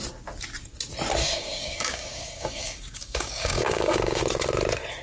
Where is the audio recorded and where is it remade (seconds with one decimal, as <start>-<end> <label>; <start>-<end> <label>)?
0.0-1.2 recorded; 1.2-4.2 remade; 4.2-5.0 recorded